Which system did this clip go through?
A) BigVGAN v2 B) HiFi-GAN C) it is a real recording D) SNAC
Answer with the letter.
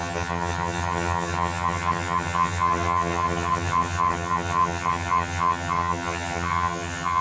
B